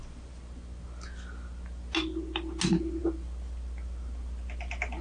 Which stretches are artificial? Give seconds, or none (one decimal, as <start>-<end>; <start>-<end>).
none